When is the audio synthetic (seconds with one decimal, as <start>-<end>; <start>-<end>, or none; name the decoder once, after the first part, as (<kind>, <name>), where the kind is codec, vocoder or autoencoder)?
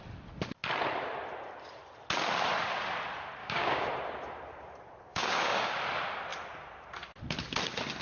3.4-3.9 (codec, DAC); 5.1-5.7